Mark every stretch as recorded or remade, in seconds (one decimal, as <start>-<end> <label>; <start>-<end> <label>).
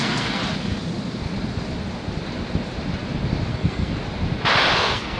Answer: 0.0-0.4 remade; 0.4-3.5 recorded; 3.5-3.9 remade; 3.9-4.7 recorded; 4.7-5.2 remade